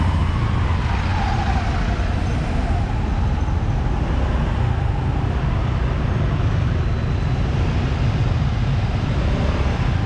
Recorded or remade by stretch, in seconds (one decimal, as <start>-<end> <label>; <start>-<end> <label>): 0.0-10.1 recorded